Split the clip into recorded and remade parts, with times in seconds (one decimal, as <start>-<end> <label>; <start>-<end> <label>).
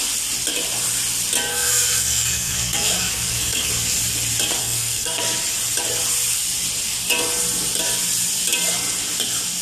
0.0-1.5 recorded; 1.5-3.7 remade; 3.7-4.6 recorded; 4.6-5.2 remade; 5.2-9.6 recorded